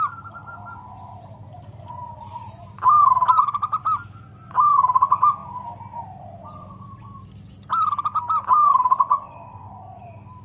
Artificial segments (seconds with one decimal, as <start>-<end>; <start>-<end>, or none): 0.0-0.4; 5.0-5.4; 6.0-6.4; 8.0-10.4